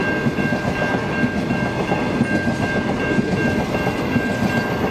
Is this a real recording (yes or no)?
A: yes